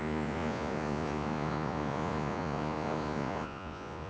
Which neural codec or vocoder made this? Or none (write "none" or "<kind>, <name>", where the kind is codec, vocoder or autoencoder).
vocoder, Vocos